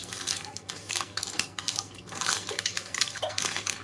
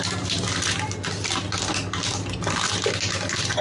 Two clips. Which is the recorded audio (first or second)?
second